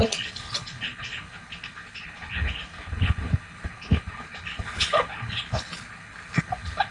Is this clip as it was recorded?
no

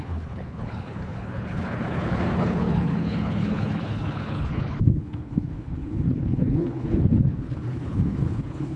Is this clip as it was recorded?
no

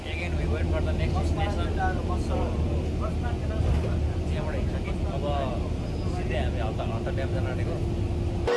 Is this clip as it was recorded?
yes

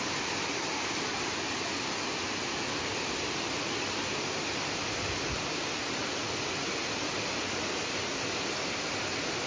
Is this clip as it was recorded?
yes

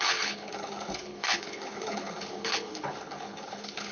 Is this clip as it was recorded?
no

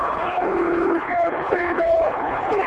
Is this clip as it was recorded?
no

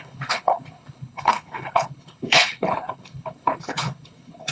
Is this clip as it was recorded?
no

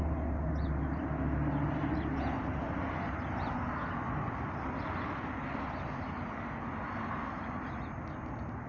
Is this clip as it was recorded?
yes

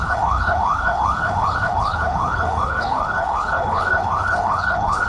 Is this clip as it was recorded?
no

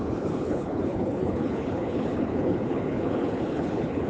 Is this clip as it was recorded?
no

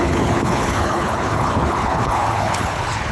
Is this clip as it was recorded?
no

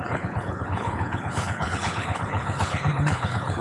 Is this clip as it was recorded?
no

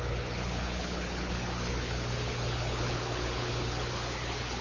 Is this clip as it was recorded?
no